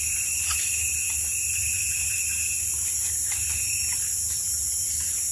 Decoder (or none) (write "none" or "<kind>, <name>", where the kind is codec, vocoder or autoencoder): none